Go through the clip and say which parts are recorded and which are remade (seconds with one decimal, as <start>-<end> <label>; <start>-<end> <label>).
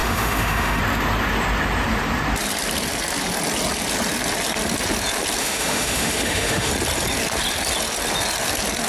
0.0-0.8 remade; 0.8-5.4 recorded; 5.4-6.7 remade; 6.7-8.9 recorded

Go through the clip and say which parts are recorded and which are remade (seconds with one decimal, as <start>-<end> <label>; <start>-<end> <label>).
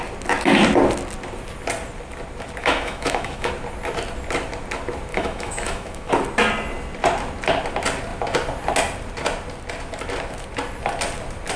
0.0-2.6 recorded; 2.6-3.5 remade; 3.5-5.1 recorded; 5.1-6.1 remade; 6.1-11.6 recorded